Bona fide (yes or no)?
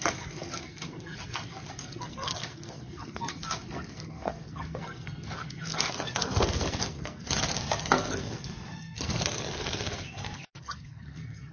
no